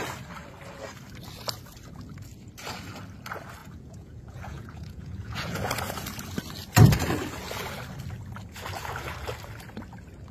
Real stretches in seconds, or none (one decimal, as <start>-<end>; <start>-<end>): 0.0-3.6; 5.7-10.3